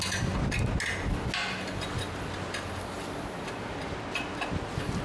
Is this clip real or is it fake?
real